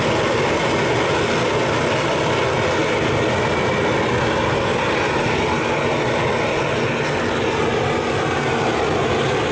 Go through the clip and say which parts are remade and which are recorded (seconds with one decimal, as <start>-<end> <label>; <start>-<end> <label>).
0.0-9.5 recorded